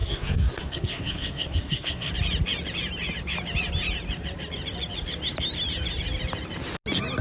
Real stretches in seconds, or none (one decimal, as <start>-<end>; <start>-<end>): 2.1-7.2